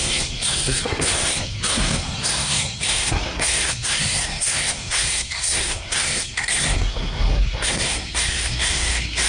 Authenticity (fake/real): fake